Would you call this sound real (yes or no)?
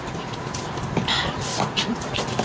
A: no